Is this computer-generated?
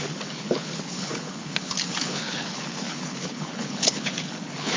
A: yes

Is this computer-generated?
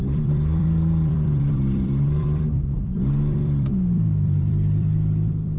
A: yes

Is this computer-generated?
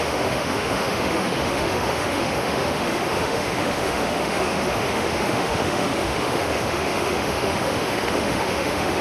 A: yes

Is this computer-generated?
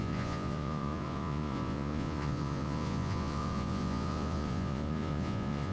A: yes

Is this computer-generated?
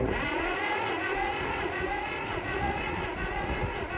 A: yes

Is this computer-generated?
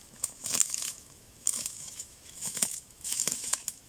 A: yes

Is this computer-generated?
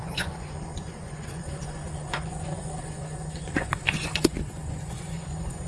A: yes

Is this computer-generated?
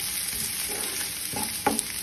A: yes